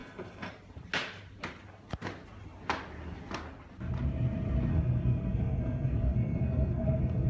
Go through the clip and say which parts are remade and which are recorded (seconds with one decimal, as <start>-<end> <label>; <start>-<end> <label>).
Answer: 0.0-0.5 remade; 0.5-4.7 recorded; 4.7-7.3 remade